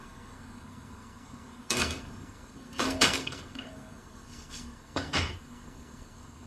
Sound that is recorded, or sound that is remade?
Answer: remade